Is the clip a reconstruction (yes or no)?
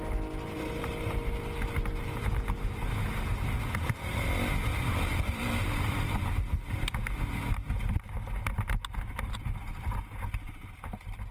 no